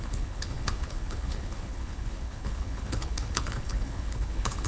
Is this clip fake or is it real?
fake